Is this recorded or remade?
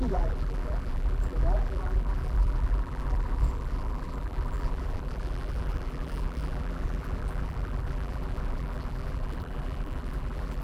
remade